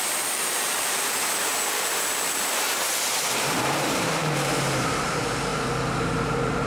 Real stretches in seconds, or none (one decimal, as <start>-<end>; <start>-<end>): 5.5-6.0

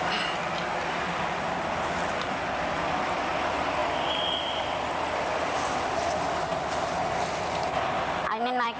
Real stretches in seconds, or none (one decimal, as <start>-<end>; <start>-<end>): 0.0-8.8

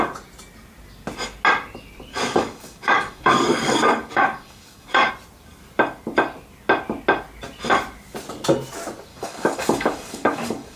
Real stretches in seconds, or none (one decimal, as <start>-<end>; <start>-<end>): 0.0-2.1; 5.1-9.1